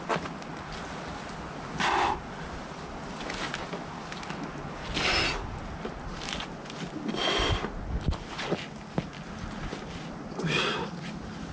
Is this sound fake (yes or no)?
no